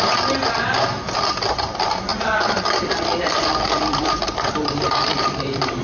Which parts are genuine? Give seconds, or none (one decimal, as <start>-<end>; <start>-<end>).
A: 0.0-2.1